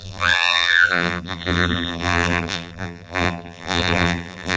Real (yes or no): no